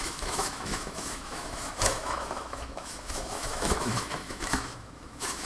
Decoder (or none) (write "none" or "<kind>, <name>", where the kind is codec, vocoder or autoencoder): autoencoder, DAC-VAE